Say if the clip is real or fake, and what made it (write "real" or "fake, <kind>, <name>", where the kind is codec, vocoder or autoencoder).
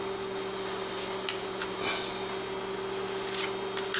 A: real